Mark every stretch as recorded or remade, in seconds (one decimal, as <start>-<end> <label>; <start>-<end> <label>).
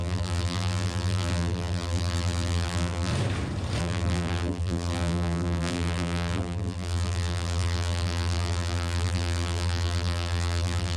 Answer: 0.0-3.1 remade; 3.1-3.8 recorded; 3.8-11.0 remade